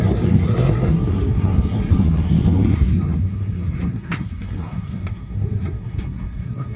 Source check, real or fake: fake